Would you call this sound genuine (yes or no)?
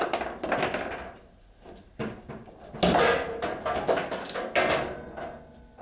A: yes